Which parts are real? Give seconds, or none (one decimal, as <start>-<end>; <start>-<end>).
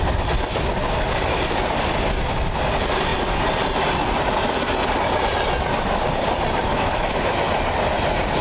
0.0-6.7; 7.4-8.4